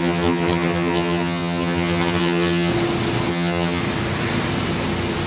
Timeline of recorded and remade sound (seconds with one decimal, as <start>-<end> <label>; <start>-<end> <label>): 0.0-2.7 remade; 2.7-3.3 recorded; 3.3-3.8 remade; 3.8-5.3 recorded